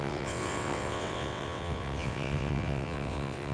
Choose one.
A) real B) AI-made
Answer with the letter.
B